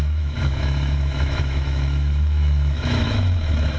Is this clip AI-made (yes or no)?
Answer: yes